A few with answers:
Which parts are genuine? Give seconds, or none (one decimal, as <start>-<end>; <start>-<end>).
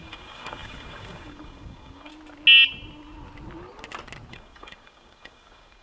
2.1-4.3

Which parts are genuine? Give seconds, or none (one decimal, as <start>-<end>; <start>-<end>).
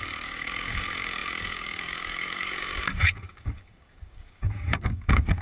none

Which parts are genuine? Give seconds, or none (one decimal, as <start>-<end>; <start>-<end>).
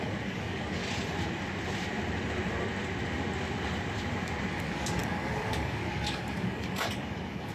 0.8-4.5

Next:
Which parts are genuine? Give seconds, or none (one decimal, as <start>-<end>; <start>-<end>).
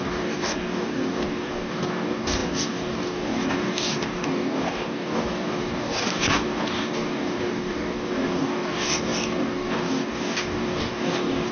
none